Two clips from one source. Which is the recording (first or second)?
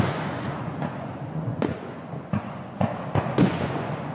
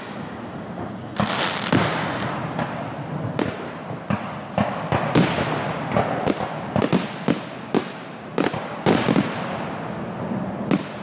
second